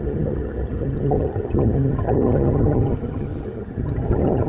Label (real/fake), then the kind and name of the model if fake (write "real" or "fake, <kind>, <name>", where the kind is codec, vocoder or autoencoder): fake, vocoder, HiFi-GAN